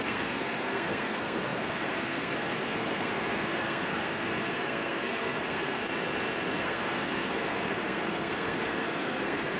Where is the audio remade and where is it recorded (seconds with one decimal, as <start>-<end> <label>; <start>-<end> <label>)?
0.0-5.8 remade; 5.8-6.6 recorded; 6.6-9.6 remade